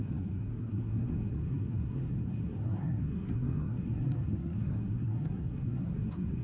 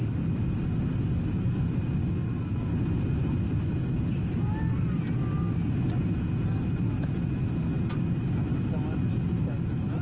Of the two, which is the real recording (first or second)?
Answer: second